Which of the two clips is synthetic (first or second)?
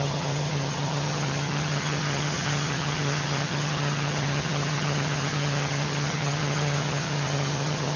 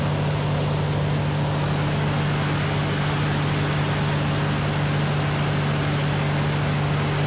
first